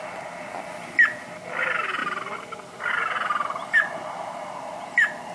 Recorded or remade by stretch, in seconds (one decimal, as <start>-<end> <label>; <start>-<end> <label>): 0.0-5.3 recorded